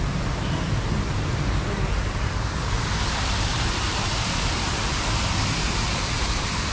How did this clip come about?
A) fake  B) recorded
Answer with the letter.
A